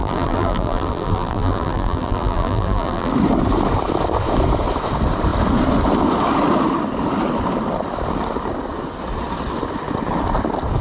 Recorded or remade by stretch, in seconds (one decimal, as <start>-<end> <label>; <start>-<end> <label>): 0.0-3.1 remade; 3.1-10.8 recorded